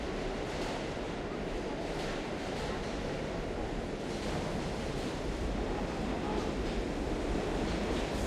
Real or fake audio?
real